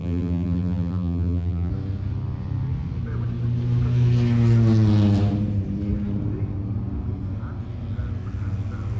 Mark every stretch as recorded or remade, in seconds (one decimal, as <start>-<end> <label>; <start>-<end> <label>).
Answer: 0.0-1.7 remade; 1.7-9.0 recorded